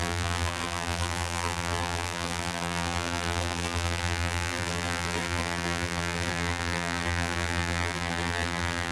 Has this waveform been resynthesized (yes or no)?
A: yes